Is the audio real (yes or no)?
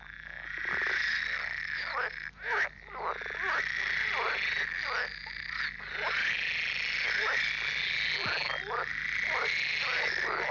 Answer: yes